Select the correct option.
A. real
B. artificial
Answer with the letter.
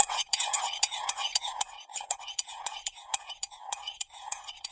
B